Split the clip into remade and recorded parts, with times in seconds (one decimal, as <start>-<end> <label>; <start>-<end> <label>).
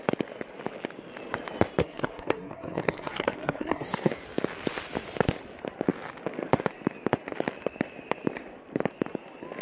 0.0-1.8 recorded; 1.8-4.1 remade; 4.1-9.6 recorded